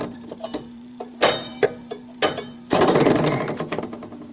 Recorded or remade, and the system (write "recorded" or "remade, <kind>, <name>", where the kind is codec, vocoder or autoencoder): remade, vocoder, BigVGAN v2